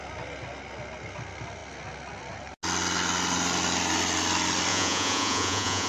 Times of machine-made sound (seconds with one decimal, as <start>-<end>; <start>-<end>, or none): 4.7-5.9

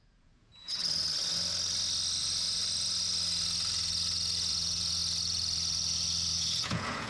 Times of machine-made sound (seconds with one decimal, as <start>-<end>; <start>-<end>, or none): 0.0-0.8; 2.2-2.6; 4.5-5.0; 6.3-7.1

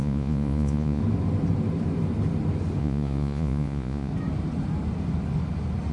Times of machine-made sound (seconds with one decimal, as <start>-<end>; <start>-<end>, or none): 0.0-1.0; 2.8-4.1

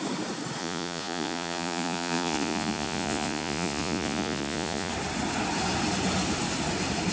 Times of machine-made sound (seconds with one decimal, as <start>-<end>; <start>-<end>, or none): 0.6-4.9